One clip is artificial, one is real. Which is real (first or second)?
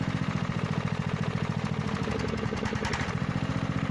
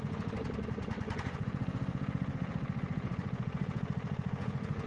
first